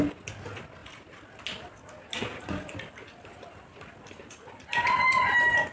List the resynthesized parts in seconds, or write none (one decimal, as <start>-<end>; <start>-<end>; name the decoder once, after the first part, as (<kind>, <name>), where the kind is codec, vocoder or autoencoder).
none